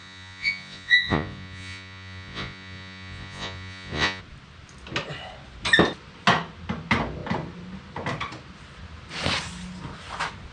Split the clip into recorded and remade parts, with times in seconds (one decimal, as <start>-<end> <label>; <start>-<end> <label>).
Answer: 0.0-4.2 remade; 4.2-10.5 recorded